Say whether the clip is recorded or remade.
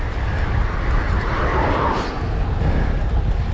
recorded